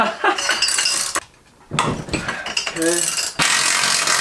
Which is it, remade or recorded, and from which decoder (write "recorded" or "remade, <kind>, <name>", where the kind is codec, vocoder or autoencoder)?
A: recorded